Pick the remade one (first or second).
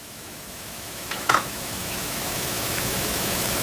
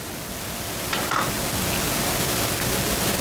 first